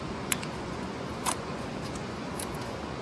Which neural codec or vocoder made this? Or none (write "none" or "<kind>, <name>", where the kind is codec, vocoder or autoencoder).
vocoder, Vocos